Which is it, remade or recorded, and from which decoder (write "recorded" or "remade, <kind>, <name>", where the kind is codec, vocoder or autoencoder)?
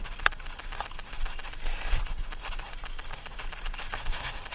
recorded